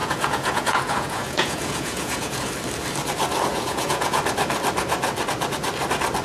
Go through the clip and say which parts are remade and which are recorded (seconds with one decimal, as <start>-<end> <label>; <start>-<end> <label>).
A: 0.0-2.5 remade; 2.5-3.5 recorded; 3.5-4.2 remade; 4.2-6.2 recorded